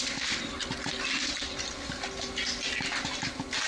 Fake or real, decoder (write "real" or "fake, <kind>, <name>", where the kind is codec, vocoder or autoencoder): real